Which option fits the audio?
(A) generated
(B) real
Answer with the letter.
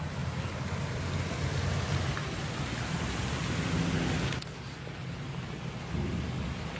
B